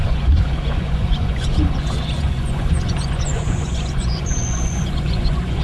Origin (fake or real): fake